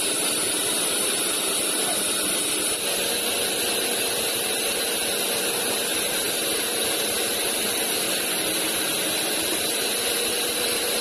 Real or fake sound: real